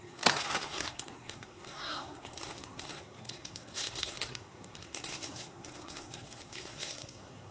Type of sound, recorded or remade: remade